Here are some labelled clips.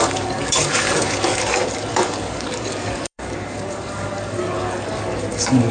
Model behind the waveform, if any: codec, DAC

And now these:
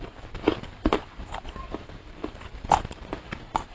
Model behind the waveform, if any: vocoder, BigVGAN v2